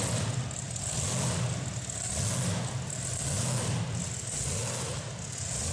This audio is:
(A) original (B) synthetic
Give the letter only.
A